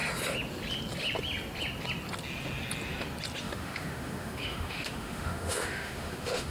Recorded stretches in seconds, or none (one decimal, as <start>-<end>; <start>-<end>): 0.0-3.4